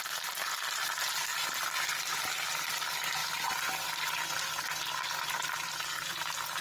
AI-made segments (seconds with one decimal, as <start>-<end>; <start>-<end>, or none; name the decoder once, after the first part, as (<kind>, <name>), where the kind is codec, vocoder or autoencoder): none